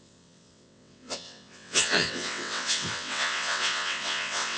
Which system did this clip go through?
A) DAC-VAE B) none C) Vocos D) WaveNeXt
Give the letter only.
D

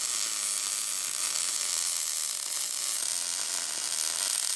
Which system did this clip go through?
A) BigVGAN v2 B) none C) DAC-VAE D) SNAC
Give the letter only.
B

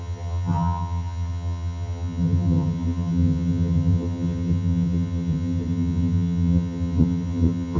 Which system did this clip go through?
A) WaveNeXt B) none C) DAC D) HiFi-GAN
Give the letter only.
D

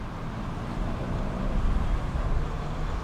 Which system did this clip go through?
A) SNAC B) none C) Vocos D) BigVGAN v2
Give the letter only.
D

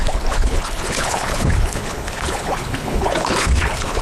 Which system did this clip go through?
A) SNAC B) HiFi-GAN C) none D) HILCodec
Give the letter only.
D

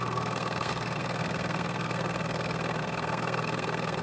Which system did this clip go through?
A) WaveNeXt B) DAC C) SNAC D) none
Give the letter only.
C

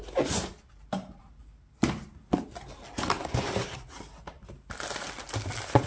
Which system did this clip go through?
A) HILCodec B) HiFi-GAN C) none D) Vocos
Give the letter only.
C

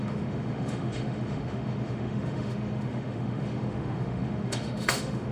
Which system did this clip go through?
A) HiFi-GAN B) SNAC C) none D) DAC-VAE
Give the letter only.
D